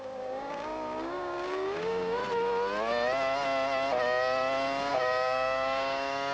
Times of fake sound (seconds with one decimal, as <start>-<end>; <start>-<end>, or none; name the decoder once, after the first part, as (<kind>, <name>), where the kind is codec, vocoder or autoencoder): 0.0-2.2 (codec, DAC); 4.9-6.3